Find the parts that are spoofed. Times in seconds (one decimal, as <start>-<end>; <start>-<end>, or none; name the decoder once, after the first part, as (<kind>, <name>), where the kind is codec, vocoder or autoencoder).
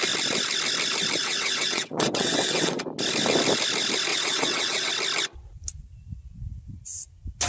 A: 1.2-2.8 (vocoder, WaveNeXt); 4.1-4.9